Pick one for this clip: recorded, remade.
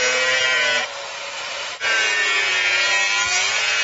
recorded